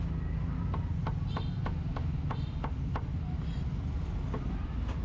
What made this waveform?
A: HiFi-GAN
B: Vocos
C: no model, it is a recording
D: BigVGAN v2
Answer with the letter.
C